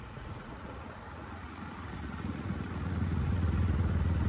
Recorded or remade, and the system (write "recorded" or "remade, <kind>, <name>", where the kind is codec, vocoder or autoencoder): remade, vocoder, Vocos